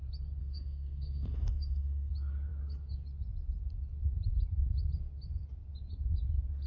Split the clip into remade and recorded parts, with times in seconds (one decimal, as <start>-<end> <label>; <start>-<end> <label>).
0.0-0.4 recorded; 0.4-2.1 remade; 2.1-6.7 recorded